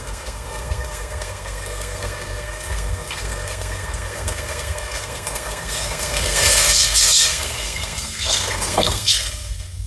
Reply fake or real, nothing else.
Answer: fake